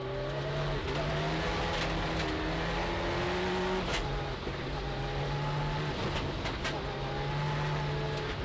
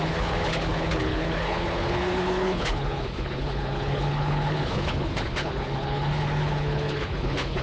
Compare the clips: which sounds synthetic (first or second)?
second